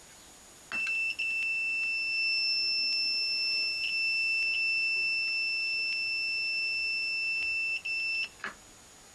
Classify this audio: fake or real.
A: real